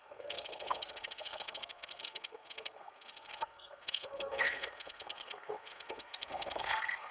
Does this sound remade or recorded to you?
remade